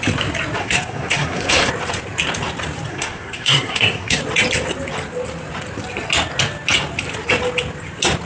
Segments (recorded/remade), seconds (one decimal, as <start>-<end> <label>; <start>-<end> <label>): 0.0-0.6 recorded; 0.6-1.7 remade; 1.7-2.9 recorded; 2.9-4.2 remade; 4.2-8.3 recorded